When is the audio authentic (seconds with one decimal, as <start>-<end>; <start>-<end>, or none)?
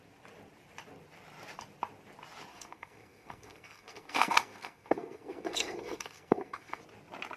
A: 0.0-2.5; 6.8-7.4